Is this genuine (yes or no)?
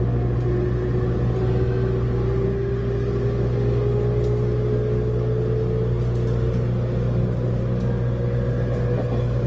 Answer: yes